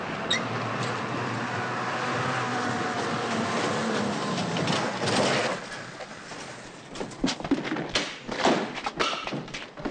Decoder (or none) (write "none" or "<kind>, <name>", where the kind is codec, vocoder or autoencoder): none